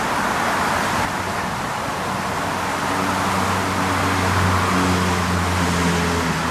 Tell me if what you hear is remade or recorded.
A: recorded